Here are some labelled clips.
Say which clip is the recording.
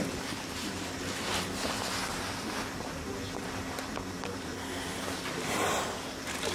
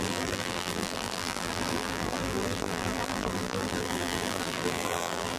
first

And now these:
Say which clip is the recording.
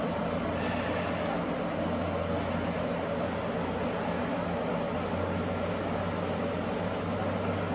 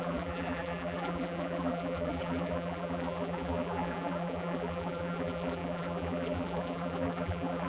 first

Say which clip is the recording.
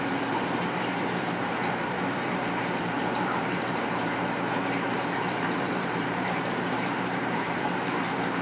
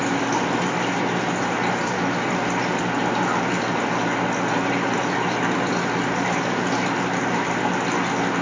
second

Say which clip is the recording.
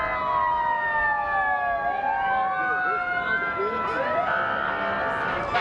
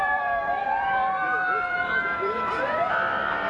first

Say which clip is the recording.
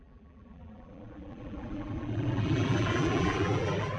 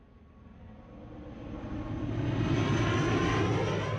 second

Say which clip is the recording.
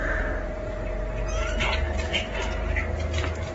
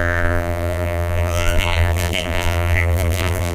first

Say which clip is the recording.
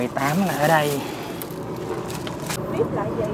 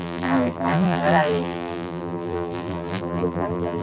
first